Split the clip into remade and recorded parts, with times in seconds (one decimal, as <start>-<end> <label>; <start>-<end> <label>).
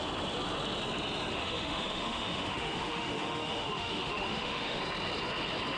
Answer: 0.0-1.3 recorded; 1.3-4.8 remade; 4.8-5.8 recorded